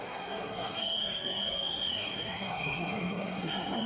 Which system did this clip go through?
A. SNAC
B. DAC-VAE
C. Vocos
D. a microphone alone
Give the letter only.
A